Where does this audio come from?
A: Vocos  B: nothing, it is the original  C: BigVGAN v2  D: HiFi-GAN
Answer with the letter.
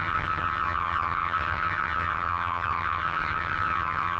D